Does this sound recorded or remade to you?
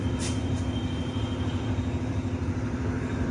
remade